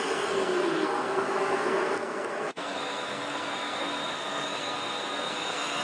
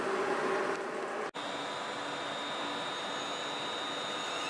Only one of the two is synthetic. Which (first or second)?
first